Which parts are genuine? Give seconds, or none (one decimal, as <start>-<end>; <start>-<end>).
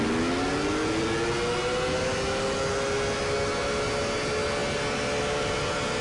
0.0-6.0